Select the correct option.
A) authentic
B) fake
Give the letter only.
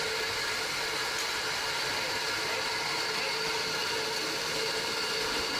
A